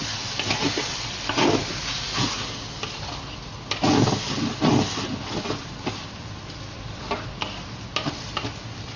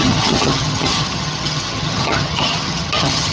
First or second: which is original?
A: first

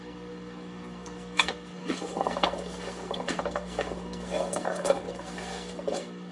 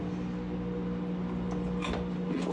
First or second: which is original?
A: second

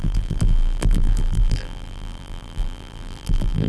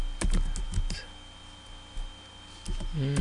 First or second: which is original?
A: second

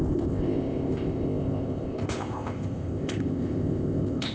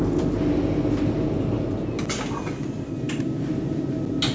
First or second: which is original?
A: second